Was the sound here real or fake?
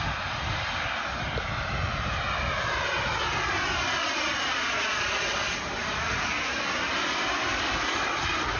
real